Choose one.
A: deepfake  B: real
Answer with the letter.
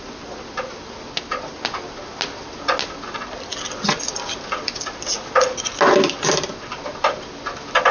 B